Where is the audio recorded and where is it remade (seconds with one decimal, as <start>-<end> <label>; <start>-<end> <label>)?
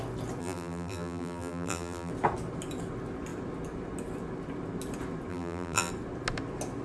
0.0-0.4 recorded; 0.4-2.1 remade; 2.1-5.3 recorded; 5.3-5.9 remade; 5.9-6.8 recorded